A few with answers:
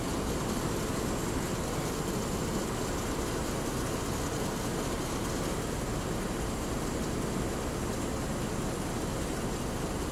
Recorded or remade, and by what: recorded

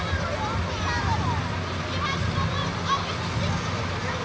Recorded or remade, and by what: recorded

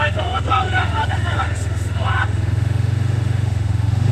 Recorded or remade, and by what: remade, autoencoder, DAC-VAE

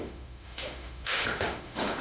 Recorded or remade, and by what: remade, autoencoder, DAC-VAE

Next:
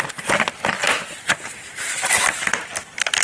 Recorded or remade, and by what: recorded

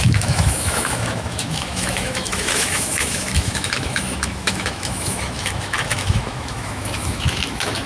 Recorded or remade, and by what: remade, autoencoder, DAC-VAE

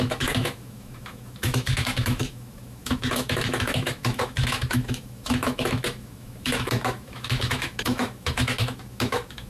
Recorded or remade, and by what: remade, autoencoder, DAC-VAE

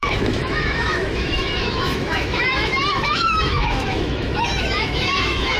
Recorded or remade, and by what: remade, autoencoder, DAC-VAE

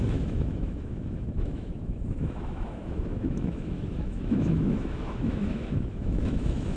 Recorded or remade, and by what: remade, autoencoder, DAC-VAE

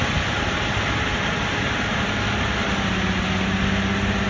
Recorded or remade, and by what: recorded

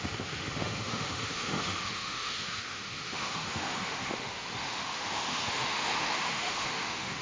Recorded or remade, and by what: remade, autoencoder, DAC-VAE